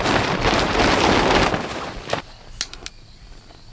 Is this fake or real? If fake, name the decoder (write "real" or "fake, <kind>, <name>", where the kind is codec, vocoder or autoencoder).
real